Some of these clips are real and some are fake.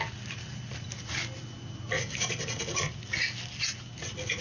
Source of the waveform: real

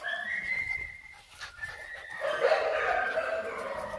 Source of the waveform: real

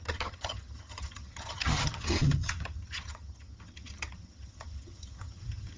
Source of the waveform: fake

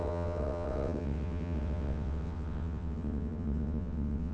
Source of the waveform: fake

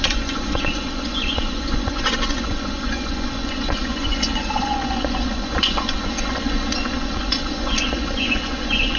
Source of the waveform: fake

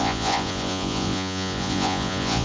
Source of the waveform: fake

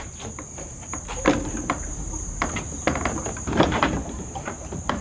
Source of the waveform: fake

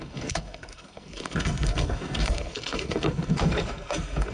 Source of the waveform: fake